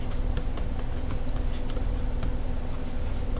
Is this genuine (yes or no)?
yes